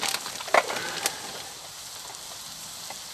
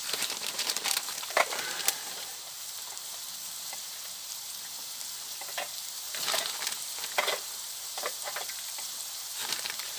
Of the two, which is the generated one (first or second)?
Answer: second